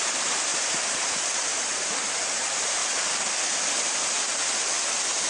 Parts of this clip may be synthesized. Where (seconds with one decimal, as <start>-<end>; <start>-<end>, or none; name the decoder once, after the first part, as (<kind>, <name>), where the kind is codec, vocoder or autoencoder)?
0.0-2.8 (vocoder, BigVGAN v2)